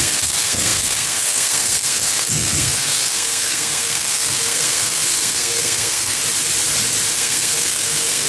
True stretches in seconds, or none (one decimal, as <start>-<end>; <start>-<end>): 6.2-7.1